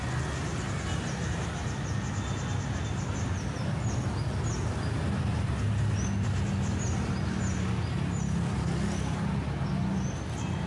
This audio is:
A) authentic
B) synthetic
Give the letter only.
A